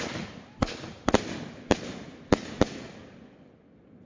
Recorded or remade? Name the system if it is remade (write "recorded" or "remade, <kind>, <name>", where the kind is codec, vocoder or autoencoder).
recorded